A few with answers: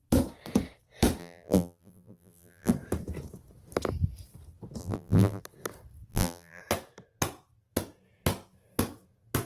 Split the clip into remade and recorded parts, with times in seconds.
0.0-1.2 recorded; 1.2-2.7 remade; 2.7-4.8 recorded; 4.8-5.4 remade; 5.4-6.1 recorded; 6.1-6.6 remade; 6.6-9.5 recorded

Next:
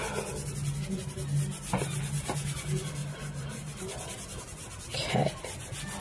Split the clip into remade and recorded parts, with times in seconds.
0.0-3.0 recorded; 3.0-5.1 remade; 5.1-6.0 recorded

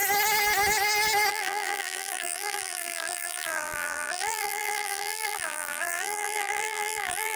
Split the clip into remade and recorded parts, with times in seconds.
0.0-1.3 recorded; 1.3-7.4 remade

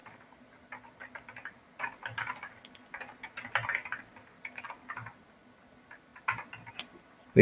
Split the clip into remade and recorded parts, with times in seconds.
0.0-3.8 recorded; 3.8-4.6 remade; 4.6-6.1 recorded; 6.1-6.7 remade; 6.7-7.4 recorded

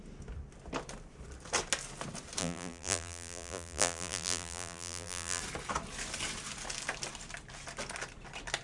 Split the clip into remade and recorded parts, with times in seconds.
0.0-2.4 recorded; 2.4-5.4 remade; 5.4-8.6 recorded